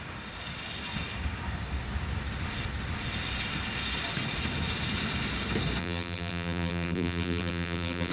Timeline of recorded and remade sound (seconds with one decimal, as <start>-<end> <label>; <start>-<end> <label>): 0.0-5.8 recorded; 5.8-8.1 remade